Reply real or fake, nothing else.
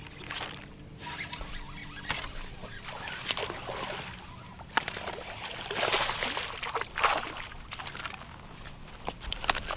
real